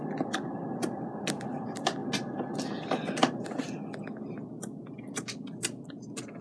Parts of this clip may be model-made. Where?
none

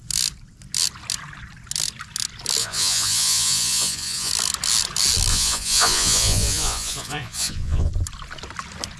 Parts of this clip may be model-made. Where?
2.6-4.3 (vocoder, Vocos); 5.3-7.9

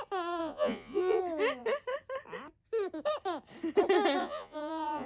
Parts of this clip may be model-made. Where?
0.4-1.2 (vocoder, Vocos); 4.2-5.1

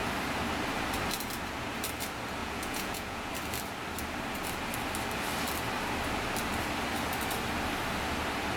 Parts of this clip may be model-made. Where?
2.4-3.3 (vocoder, Vocos)

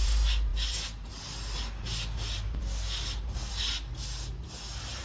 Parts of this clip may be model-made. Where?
none

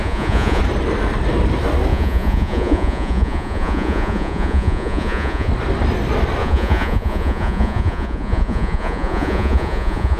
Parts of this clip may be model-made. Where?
0.0-0.6 (vocoder, Vocos); 1.9-5.5; 6.4-10.2

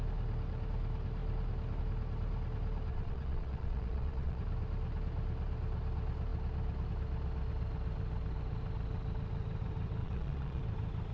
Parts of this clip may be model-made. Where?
2.9-4.4 (vocoder, Vocos); 10.0-10.6